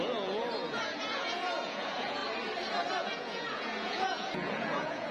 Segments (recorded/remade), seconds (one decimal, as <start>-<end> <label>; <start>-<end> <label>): 0.0-2.2 remade; 2.2-3.0 recorded; 3.0-5.1 remade